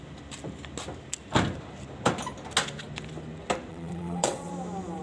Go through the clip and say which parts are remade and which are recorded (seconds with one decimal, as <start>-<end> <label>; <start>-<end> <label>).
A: 0.0-3.7 recorded; 3.7-4.5 remade; 4.5-5.0 recorded